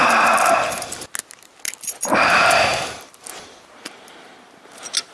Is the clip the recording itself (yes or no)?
yes